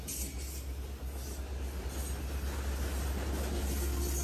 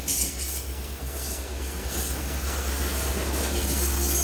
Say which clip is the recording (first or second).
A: first